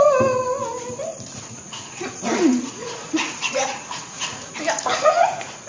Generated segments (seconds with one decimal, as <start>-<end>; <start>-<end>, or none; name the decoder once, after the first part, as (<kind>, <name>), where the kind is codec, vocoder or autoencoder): 1.1-4.5 (vocoder, Vocos); 4.9-5.7